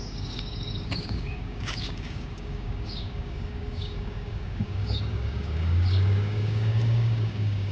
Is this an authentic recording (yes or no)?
no